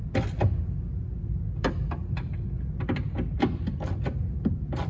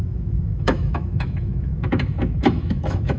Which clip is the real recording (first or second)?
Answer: first